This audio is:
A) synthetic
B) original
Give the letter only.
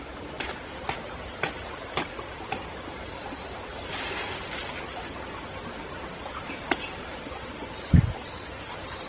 B